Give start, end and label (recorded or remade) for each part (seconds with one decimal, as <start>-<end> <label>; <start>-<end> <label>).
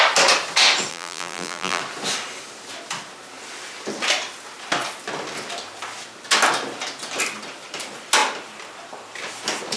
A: 0.0-0.9 recorded; 0.9-1.8 remade; 1.8-9.8 recorded